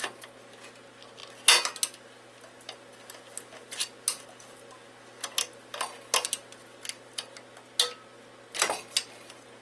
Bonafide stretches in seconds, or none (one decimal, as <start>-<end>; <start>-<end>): 0.0-9.6